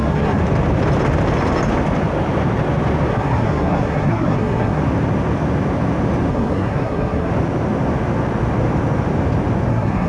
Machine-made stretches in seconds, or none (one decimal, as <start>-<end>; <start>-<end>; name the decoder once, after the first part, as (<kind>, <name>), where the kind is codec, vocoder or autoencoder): 0.0-0.4 (codec, SNAC); 3.1-4.8; 6.3-7.3; 9.7-10.1